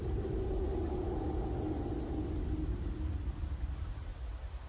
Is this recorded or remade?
recorded